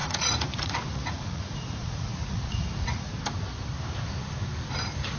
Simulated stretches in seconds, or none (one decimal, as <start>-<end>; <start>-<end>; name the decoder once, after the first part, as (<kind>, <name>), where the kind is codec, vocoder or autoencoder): 0.0-3.1 (vocoder, Vocos)